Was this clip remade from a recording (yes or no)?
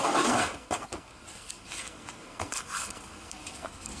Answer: yes